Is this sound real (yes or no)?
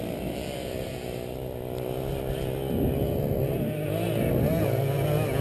yes